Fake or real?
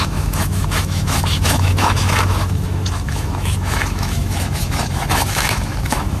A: fake